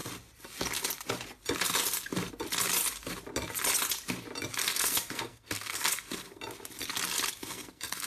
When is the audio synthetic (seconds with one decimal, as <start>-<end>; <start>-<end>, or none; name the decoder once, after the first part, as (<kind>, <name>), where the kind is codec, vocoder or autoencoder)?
4.6-6.4 (codec, SNAC); 7.4-8.1